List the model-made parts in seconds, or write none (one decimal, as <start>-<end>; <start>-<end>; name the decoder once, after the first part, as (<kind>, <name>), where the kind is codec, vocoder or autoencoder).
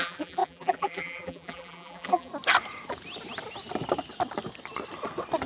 0.0-2.3 (vocoder, BigVGAN v2)